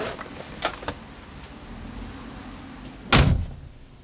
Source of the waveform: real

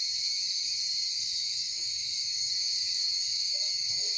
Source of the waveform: fake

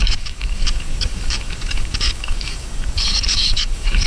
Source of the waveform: fake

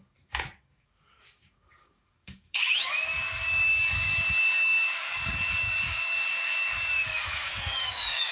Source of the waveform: fake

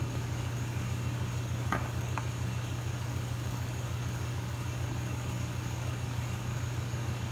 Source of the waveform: fake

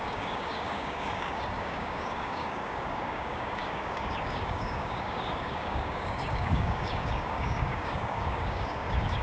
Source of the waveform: fake